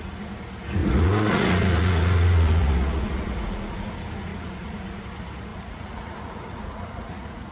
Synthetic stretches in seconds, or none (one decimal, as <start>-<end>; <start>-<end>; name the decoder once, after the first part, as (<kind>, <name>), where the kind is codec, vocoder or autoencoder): 0.8-3.9 (vocoder, Vocos); 4.3-5.0; 5.5-7.5